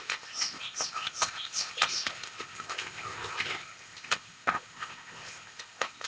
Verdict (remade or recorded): remade